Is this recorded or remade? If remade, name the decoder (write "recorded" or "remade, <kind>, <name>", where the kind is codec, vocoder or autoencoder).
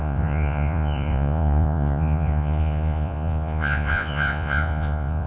remade, vocoder, Vocos